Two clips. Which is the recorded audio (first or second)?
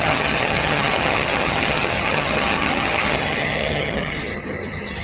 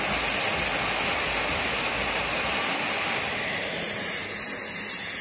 second